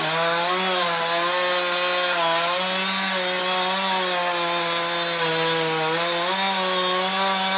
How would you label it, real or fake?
real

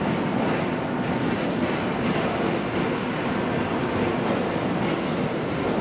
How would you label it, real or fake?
real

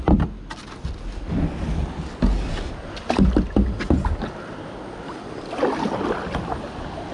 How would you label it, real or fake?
real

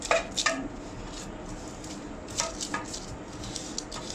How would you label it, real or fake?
real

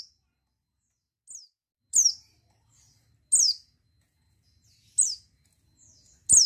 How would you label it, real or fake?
real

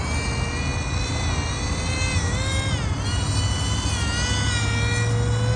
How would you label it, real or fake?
real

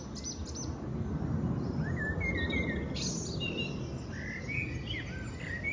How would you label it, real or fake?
real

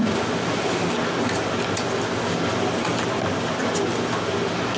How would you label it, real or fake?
real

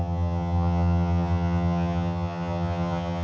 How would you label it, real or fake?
fake